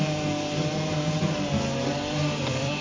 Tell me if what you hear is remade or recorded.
remade